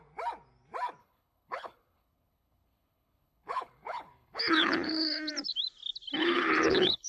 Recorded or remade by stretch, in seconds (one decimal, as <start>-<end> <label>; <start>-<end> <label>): 0.0-1.0 recorded; 1.0-5.3 remade; 5.3-6.2 recorded; 6.2-7.1 remade